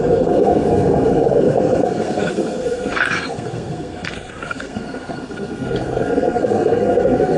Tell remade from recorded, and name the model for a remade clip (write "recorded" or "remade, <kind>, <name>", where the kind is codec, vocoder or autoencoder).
remade, codec, SNAC